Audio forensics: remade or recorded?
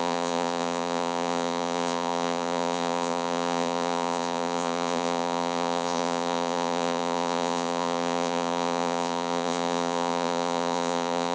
remade